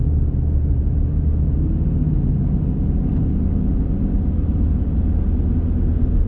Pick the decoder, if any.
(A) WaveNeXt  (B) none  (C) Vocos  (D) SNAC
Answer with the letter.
B